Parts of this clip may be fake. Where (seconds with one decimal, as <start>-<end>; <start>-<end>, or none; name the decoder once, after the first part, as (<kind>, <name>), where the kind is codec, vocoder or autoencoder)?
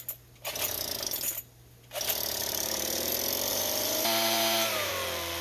2.4-3.1 (vocoder, BigVGAN v2); 3.5-4.9